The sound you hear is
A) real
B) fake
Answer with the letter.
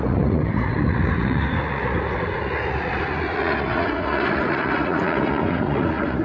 B